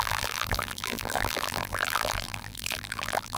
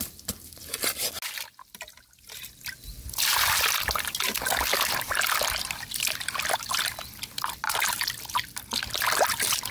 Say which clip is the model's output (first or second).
first